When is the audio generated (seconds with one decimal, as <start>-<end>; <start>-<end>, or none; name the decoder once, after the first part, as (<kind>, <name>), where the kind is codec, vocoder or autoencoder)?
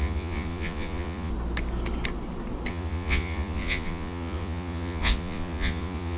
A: 0.0-1.3 (vocoder, Vocos); 2.7-6.2